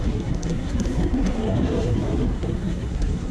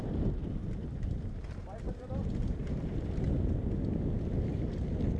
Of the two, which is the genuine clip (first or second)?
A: second